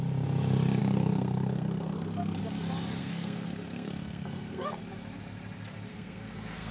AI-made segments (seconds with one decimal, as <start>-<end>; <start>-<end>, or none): 0.8-2.4; 3.0-4.8; 5.9-6.7